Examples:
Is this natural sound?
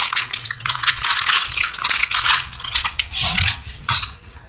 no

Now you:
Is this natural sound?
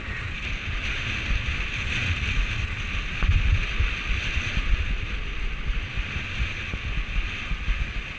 yes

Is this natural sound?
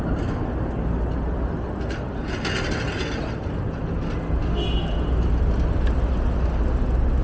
yes